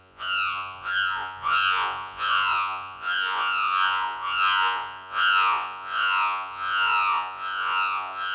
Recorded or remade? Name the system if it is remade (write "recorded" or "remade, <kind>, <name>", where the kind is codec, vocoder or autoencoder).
remade, vocoder, Vocos